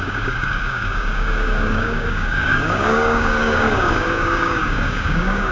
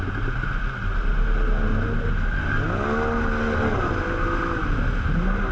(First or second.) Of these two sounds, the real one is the second